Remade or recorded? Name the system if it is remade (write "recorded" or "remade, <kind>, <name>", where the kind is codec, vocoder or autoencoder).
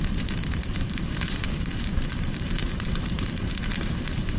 remade, vocoder, BigVGAN v2